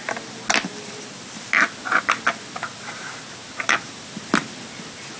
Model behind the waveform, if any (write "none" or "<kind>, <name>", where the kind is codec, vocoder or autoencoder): none